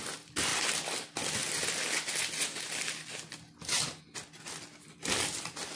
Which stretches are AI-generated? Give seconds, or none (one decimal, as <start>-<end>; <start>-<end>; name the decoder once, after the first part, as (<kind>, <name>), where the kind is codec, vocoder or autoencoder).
none